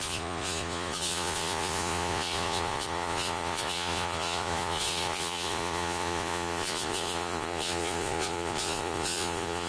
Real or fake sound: fake